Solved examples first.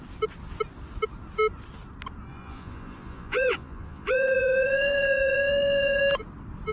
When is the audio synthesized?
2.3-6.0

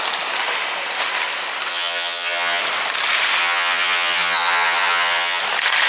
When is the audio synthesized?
1.7-2.6; 3.4-5.4

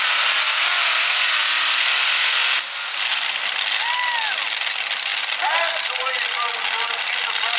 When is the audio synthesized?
none

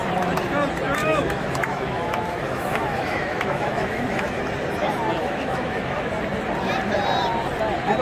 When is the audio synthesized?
1.0-4.4; 5.2-6.1

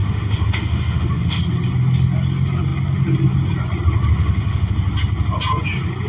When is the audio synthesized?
0.0-1.4; 4.2-4.7

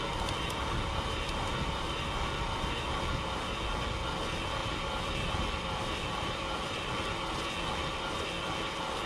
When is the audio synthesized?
4.6-6.9

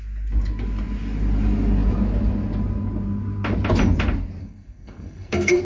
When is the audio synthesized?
4.4-5.6

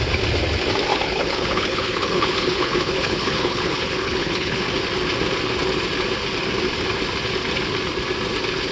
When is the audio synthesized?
0.9-4.6